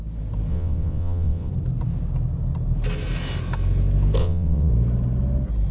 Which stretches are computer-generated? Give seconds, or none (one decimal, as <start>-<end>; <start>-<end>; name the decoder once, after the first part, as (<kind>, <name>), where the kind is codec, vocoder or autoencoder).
0.5-1.5 (vocoder, WaveNeXt); 4.2-4.7